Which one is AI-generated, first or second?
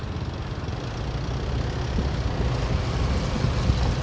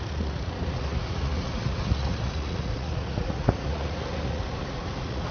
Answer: second